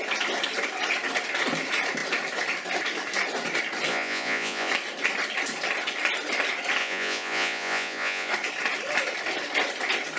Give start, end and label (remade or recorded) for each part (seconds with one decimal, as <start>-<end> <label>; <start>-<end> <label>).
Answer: 0.0-3.9 recorded; 3.9-4.7 remade; 4.7-6.8 recorded; 6.8-8.3 remade; 8.3-10.2 recorded